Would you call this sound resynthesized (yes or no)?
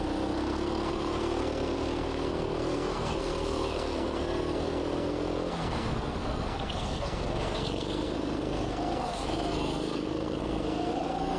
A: yes